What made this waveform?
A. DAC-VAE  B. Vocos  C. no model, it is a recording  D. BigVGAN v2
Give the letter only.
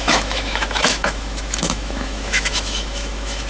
A